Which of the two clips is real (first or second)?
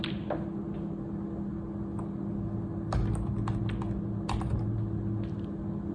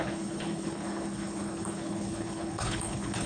first